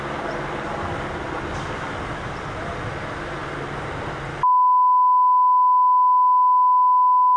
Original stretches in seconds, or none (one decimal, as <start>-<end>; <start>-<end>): 0.0-7.4